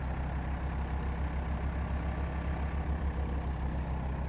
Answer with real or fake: real